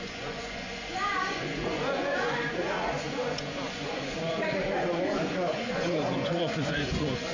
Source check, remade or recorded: remade